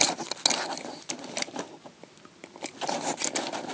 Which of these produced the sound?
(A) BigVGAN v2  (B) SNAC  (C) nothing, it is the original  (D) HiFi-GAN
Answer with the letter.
C